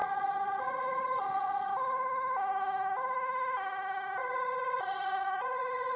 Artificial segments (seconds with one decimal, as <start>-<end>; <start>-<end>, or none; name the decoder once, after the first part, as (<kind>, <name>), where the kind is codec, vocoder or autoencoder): 0.0-1.7 (vocoder, Vocos); 4.2-6.0